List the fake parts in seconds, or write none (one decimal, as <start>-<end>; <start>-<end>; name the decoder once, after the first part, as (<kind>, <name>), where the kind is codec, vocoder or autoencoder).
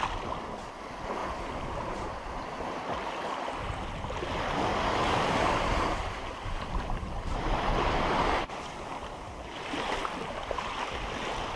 1.2-2.9 (vocoder, BigVGAN v2); 4.7-9.5